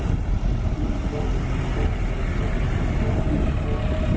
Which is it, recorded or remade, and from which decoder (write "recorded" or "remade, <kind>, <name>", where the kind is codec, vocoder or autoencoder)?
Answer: recorded